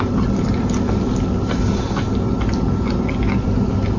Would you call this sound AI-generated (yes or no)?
no